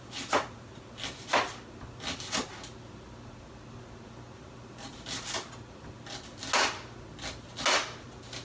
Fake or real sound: real